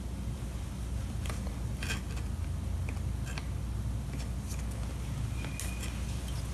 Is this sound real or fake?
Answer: real